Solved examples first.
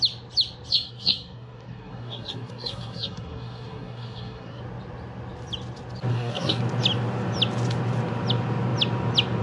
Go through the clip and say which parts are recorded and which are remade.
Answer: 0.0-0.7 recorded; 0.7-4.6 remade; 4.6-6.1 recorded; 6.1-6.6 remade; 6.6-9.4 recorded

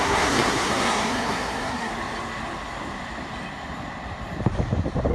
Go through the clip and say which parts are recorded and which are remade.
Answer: 0.0-1.9 remade; 1.9-5.1 recorded

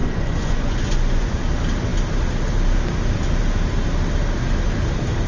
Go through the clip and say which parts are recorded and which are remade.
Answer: 0.0-1.4 remade; 1.4-5.3 recorded

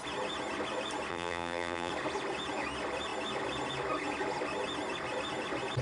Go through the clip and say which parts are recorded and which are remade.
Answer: 0.0-1.1 recorded; 1.1-1.9 remade; 1.9-5.8 recorded

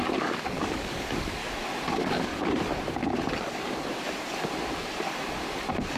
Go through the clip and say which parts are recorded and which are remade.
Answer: 0.0-1.4 remade; 1.4-1.9 recorded; 1.9-2.3 remade; 2.3-6.0 recorded